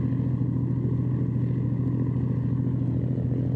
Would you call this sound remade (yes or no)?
no